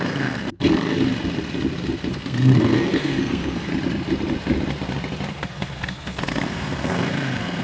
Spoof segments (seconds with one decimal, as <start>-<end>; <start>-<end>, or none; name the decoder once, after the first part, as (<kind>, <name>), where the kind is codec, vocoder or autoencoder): 0.0-0.6 (codec, SNAC); 2.1-3.7; 5.3-7.6